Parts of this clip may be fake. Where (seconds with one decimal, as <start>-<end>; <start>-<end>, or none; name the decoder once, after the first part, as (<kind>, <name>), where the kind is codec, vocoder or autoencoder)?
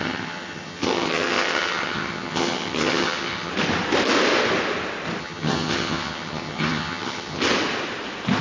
0.0-3.5 (vocoder, HiFi-GAN); 5.2-7.4